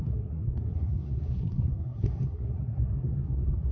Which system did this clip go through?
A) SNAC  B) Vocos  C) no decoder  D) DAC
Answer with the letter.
A